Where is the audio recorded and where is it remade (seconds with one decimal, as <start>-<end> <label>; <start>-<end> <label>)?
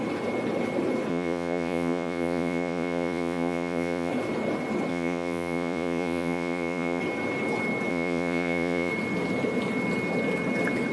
0.0-1.1 recorded; 1.1-4.1 remade; 4.1-4.9 recorded; 4.9-7.0 remade; 7.0-7.9 recorded; 7.9-8.9 remade; 8.9-10.9 recorded